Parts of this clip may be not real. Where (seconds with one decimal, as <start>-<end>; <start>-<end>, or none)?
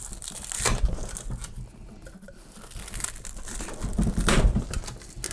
none